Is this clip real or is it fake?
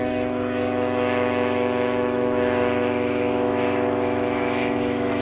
fake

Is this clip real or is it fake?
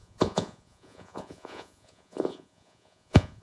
fake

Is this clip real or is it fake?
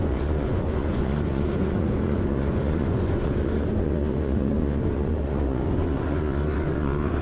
fake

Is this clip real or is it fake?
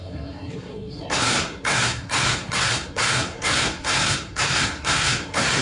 fake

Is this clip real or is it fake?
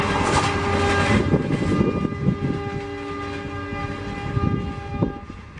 real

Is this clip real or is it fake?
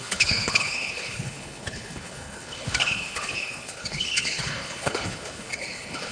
fake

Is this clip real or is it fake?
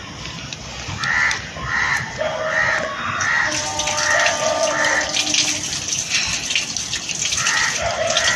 real